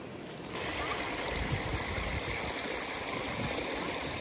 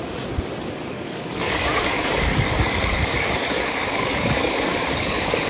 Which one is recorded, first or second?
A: first